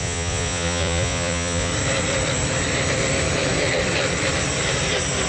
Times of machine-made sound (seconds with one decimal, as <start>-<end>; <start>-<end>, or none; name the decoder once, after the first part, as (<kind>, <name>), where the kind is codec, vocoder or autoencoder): 0.0-1.7 (vocoder, Vocos)

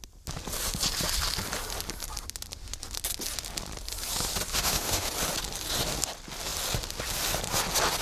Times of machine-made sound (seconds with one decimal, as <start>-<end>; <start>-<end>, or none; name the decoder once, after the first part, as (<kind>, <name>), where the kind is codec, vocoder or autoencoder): 4.5-5.1 (autoencoder, DAC-VAE)

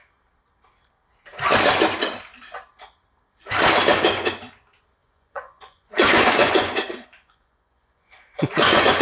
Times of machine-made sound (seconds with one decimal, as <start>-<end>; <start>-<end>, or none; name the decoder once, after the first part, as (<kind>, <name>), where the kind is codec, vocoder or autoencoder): 5.0-9.0 (vocoder, Vocos)

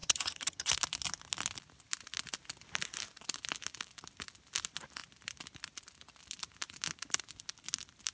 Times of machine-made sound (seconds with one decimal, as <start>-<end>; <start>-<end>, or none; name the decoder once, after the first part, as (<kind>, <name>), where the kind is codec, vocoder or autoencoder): 0.0-0.7 (vocoder, HiFi-GAN)

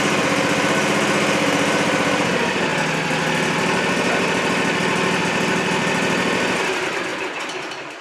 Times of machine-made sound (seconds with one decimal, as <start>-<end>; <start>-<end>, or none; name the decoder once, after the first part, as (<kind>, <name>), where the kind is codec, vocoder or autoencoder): 0.0-2.7 (vocoder, BigVGAN v2); 5.2-8.0

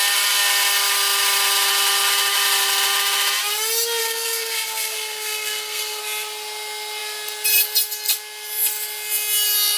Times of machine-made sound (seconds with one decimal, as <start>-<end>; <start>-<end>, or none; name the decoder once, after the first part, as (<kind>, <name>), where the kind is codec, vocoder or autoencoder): 4.0-6.0 (codec, SNAC)